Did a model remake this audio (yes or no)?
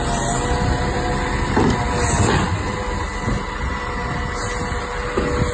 no